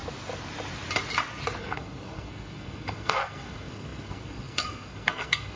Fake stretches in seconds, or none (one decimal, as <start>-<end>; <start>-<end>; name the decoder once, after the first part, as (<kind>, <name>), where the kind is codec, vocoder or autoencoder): 1.6-5.6 (codec, SNAC)